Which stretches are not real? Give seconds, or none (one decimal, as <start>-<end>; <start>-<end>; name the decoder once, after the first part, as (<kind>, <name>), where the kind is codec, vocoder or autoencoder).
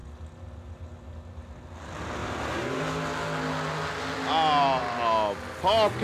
2.2-2.8 (vocoder, BigVGAN v2)